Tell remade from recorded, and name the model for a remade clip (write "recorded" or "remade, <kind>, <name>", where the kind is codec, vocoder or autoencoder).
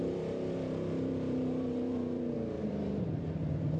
remade, vocoder, BigVGAN v2